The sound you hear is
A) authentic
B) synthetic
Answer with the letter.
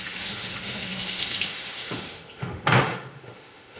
B